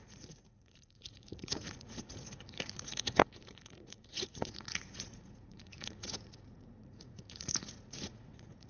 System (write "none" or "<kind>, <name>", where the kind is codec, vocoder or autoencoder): vocoder, Vocos